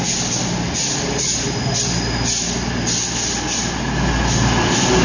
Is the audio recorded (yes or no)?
yes